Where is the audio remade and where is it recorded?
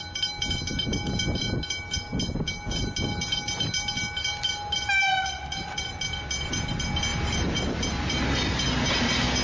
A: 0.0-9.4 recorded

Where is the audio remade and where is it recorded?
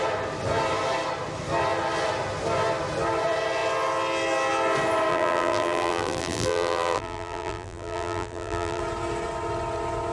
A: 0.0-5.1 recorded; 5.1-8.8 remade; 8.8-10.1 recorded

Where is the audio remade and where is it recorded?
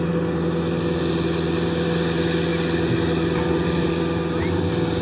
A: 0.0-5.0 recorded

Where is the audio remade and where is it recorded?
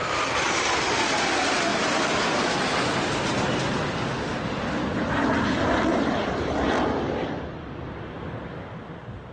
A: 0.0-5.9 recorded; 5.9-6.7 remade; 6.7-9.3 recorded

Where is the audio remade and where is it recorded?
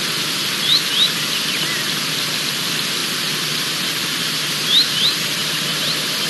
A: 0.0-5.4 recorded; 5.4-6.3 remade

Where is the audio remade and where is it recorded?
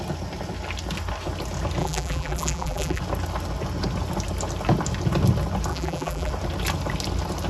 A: 0.0-1.8 recorded; 1.8-3.0 remade; 3.0-5.7 recorded; 5.7-6.3 remade; 6.3-7.5 recorded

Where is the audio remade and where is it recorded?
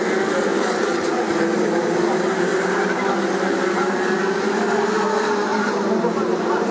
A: 0.0-0.5 recorded; 0.5-1.1 remade; 1.1-2.5 recorded; 2.5-4.3 remade; 4.3-5.5 recorded; 5.5-6.7 remade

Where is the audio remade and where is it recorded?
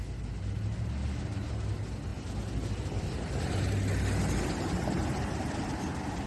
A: 0.0-6.3 recorded